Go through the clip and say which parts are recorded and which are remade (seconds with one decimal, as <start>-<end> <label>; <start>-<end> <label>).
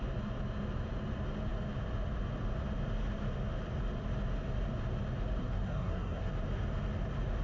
0.0-5.4 recorded; 5.4-6.3 remade; 6.3-7.4 recorded